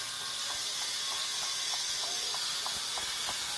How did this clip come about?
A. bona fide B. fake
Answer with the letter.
A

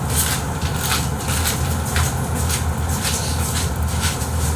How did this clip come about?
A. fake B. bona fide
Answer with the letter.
B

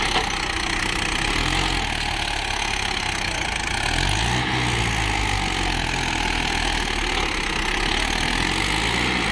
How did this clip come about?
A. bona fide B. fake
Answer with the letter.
A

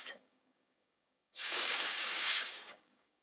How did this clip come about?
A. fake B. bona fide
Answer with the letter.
A